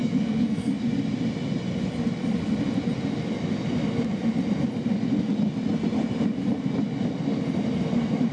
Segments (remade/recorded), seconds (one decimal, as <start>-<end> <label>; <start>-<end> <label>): 0.0-0.7 remade; 0.7-8.3 recorded